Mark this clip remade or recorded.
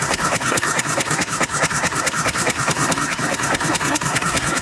remade